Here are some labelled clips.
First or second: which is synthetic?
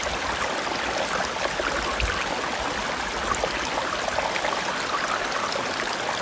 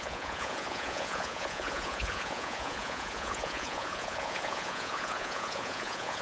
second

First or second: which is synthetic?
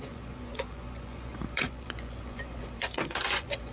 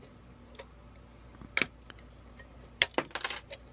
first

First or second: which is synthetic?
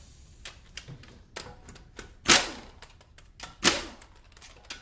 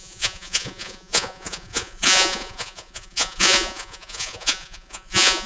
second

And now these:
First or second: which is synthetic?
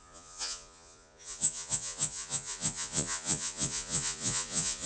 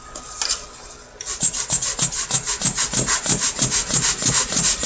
first